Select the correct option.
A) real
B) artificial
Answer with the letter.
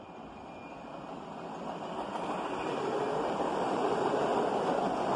A